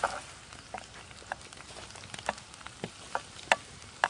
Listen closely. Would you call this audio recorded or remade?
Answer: recorded